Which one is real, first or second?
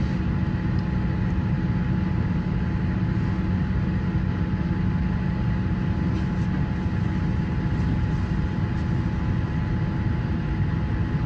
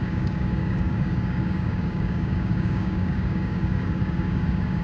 first